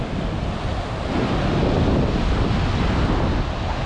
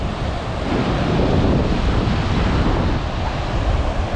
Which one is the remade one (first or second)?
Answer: second